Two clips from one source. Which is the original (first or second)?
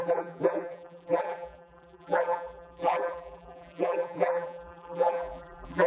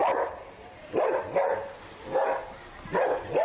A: second